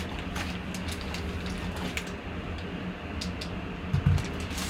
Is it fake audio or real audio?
real